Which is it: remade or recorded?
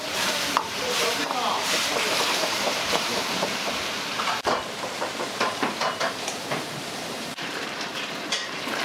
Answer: remade